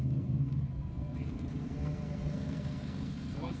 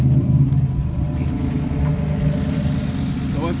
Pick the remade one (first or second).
first